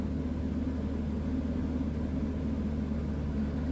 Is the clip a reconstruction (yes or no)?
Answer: no